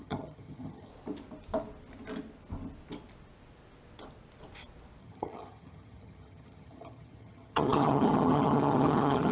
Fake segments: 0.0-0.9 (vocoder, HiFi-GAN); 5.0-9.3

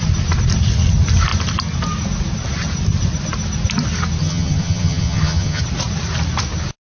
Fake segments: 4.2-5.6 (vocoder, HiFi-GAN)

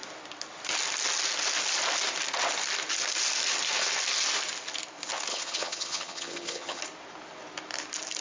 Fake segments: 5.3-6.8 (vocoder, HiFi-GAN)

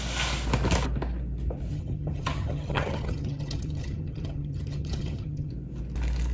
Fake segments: 1.7-5.5 (vocoder, HiFi-GAN)